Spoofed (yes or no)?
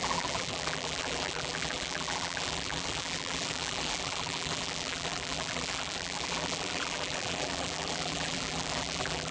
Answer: yes